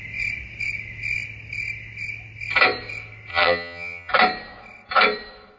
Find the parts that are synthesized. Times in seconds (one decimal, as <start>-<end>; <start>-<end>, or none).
3.3-4.1